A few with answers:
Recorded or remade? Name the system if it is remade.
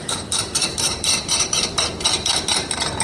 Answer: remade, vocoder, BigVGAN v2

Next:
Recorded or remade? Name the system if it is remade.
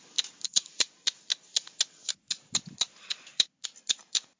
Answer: recorded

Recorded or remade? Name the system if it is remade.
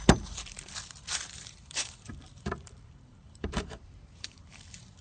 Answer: remade, vocoder, BigVGAN v2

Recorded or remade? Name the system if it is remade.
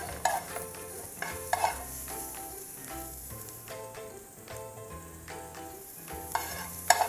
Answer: remade, vocoder, BigVGAN v2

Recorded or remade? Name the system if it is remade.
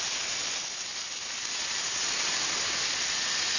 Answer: recorded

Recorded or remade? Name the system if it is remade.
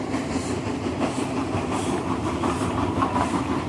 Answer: remade, vocoder, BigVGAN v2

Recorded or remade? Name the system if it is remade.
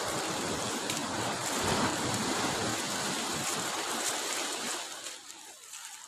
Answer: remade, vocoder, BigVGAN v2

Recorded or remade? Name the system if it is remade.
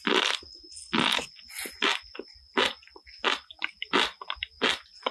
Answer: recorded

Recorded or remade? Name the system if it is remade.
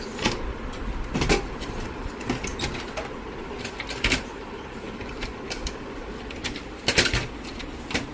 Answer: remade, vocoder, BigVGAN v2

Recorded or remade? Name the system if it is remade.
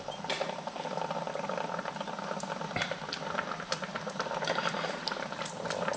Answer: recorded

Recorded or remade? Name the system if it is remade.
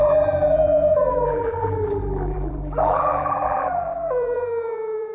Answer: remade, vocoder, BigVGAN v2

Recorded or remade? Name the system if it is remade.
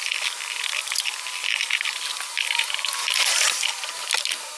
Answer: recorded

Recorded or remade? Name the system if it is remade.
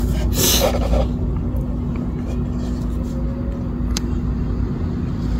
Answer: recorded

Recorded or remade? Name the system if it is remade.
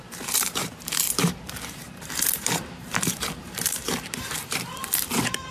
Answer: remade, vocoder, BigVGAN v2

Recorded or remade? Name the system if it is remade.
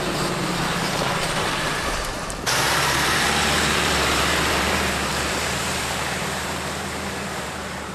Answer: remade, vocoder, BigVGAN v2